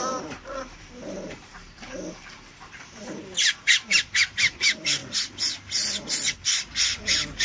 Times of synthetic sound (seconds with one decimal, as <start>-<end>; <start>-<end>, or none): 0.0-5.0; 7.0-7.4